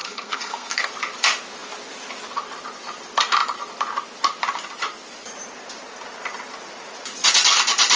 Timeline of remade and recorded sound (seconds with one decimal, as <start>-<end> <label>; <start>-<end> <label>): 0.0-0.9 remade; 0.9-8.0 recorded